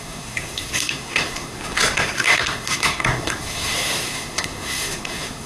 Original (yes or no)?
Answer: no